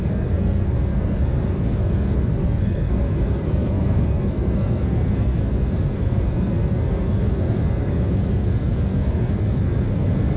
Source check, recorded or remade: remade